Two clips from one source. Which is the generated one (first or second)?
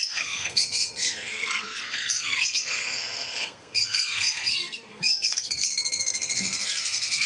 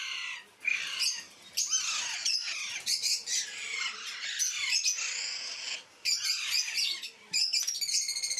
first